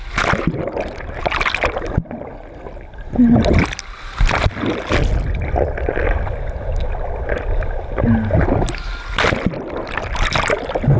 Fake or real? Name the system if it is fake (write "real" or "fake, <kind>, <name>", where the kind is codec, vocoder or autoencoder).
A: real